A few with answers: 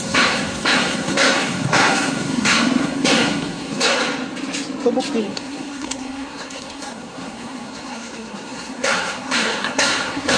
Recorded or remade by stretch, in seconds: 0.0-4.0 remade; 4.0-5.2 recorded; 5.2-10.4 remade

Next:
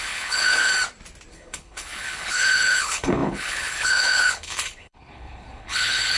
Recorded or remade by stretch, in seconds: 0.0-0.7 remade; 0.7-1.3 recorded; 1.3-6.2 remade